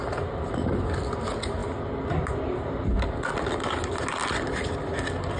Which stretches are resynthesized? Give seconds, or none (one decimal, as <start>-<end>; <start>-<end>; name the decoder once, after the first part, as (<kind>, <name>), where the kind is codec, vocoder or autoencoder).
none